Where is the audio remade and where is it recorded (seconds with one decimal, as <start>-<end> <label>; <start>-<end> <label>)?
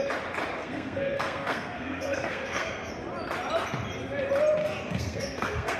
0.0-0.6 recorded; 0.6-2.9 remade; 2.9-4.6 recorded; 4.6-5.8 remade